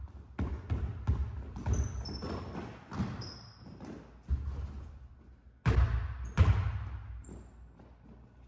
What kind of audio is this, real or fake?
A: real